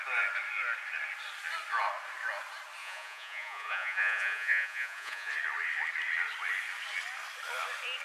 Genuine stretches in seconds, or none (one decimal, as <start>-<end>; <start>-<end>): 0.0-2.8; 5.3-8.0